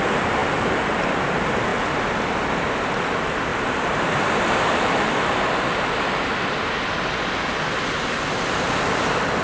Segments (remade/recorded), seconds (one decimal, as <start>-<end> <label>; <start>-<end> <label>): 0.0-0.4 recorded; 0.4-1.0 remade; 1.0-3.5 recorded; 3.5-6.2 remade; 6.2-9.4 recorded